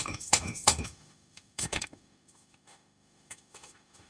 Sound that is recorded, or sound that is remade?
remade